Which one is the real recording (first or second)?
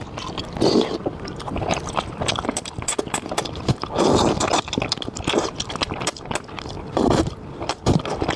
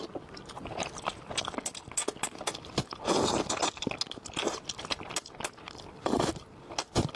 second